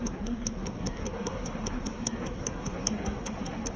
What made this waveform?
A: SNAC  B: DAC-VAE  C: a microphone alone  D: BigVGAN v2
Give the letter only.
A